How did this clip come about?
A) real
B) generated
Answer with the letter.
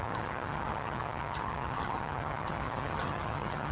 B